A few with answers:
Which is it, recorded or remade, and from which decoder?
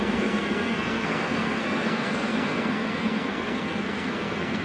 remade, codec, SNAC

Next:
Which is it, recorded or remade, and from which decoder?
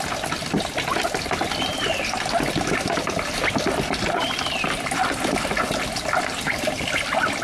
recorded